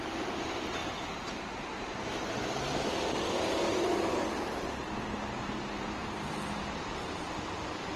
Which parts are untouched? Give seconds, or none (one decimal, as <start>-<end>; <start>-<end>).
0.8-1.4; 2.7-3.3